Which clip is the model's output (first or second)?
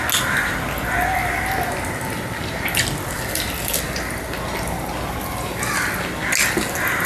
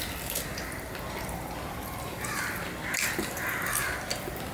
second